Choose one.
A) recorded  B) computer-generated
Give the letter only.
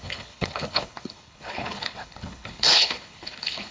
B